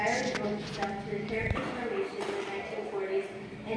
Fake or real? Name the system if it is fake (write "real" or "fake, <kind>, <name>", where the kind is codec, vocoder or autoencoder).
real